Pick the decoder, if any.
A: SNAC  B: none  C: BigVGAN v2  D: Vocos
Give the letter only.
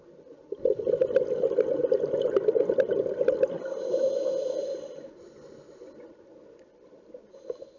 B